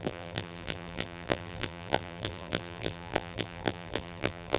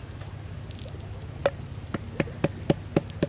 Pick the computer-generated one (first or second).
first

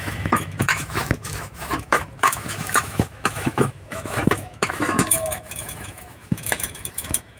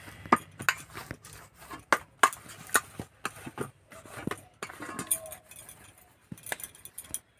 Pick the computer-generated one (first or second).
first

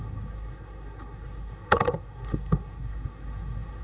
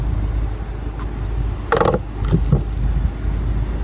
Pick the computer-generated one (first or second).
first